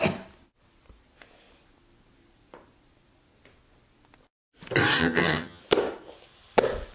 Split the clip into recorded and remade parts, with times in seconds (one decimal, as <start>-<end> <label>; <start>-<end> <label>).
0.0-5.0 recorded; 5.0-5.6 remade; 5.6-6.9 recorded